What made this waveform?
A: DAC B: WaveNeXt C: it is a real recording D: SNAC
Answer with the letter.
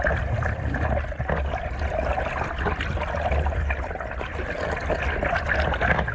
C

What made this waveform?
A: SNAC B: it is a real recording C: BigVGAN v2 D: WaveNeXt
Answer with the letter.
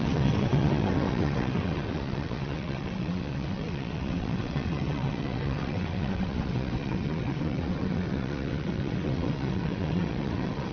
D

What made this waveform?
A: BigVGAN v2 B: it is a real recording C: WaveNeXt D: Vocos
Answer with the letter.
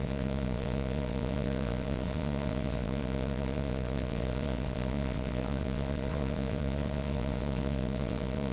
C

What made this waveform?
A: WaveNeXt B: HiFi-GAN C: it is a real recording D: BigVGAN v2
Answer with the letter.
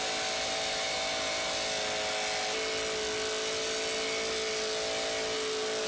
C